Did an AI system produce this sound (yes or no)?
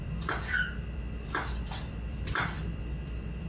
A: yes